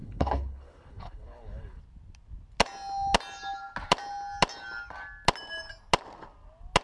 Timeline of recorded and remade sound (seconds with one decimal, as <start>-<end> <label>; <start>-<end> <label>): 0.0-1.8 remade; 1.8-6.8 recorded